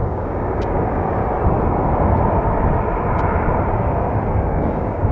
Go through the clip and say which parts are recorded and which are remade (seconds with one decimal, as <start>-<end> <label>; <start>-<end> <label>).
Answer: 0.0-1.2 remade; 1.2-4.3 recorded; 4.3-5.1 remade